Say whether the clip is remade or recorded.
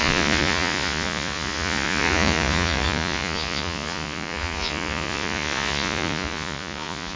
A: remade